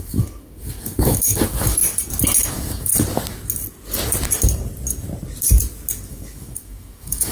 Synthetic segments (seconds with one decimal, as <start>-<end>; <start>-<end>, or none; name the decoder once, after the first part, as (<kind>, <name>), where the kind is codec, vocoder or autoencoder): 0.0-1.8 (autoencoder, DAC-VAE); 2.5-2.9; 6.1-7.3